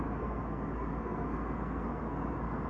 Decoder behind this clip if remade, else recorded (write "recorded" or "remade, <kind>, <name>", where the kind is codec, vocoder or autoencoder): remade, codec, SNAC